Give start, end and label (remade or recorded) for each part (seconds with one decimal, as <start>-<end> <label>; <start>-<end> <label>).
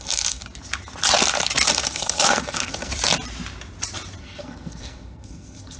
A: 0.0-0.4 remade; 0.4-1.7 recorded; 1.7-2.9 remade; 2.9-4.2 recorded; 4.2-5.8 remade